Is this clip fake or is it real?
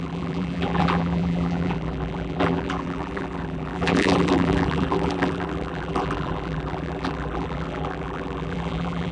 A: fake